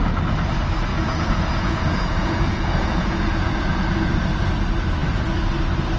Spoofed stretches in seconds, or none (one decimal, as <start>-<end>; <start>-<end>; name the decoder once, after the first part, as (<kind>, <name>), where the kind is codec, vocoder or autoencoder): 0.9-4.1 (vocoder, Vocos)